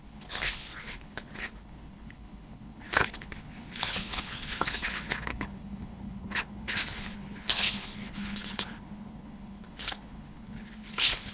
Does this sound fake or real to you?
fake